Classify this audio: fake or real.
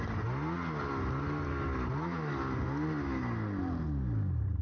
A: real